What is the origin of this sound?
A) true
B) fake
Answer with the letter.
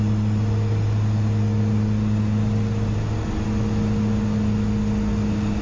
A